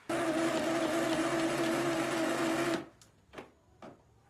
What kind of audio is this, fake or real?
real